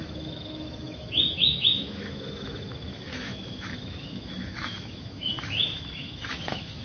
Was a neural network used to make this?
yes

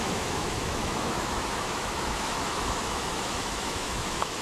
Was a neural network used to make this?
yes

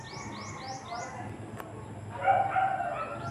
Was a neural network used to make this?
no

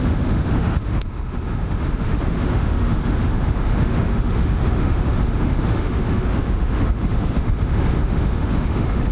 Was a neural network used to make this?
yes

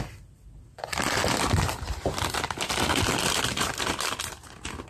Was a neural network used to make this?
no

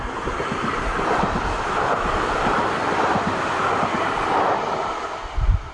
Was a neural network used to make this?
no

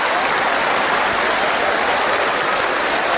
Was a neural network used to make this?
no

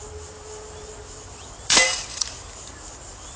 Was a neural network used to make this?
no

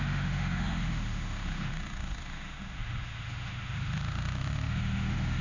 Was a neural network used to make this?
yes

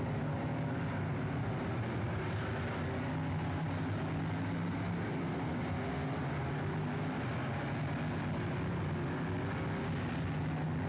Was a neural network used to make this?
no